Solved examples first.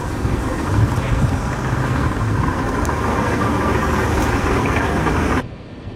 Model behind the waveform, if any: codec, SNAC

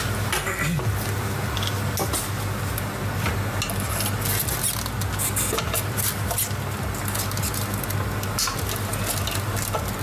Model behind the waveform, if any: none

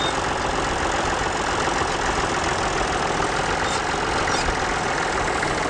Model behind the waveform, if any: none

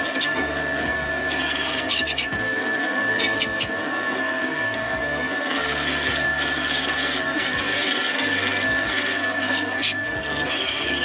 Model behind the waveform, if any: codec, SNAC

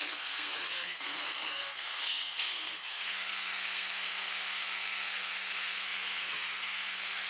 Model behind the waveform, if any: codec, SNAC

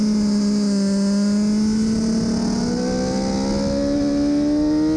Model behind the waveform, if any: none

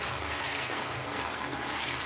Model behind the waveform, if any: codec, SNAC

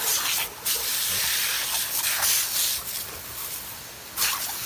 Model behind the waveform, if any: none